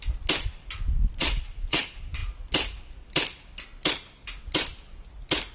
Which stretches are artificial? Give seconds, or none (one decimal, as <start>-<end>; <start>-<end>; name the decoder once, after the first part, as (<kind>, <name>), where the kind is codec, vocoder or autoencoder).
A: 1.2-1.8 (vocoder, WaveNeXt)